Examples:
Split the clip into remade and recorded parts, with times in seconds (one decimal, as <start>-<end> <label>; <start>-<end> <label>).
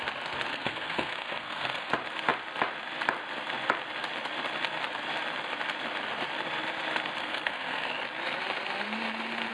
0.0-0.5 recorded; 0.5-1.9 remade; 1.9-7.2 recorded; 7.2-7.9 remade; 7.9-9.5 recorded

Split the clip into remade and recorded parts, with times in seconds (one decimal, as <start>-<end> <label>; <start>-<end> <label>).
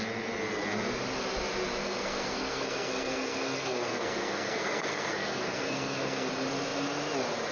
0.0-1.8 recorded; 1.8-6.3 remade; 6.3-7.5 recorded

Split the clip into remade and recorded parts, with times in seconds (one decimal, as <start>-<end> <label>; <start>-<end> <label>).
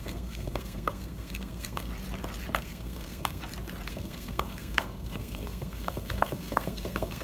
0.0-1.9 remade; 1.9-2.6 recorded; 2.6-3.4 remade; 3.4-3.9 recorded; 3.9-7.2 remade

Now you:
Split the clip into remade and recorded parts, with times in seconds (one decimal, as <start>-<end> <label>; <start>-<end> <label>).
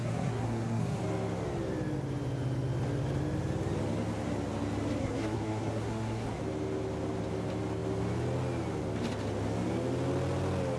0.0-1.0 remade; 1.0-5.0 recorded; 5.0-6.4 remade; 6.4-10.8 recorded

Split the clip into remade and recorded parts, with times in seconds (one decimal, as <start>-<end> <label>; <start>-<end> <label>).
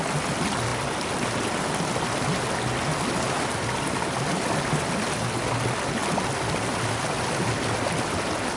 0.0-8.6 recorded